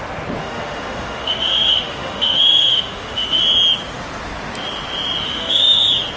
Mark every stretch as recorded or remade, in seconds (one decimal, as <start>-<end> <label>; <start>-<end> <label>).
0.0-0.4 recorded; 0.4-3.4 remade; 3.4-5.2 recorded; 5.2-5.8 remade; 5.8-6.2 recorded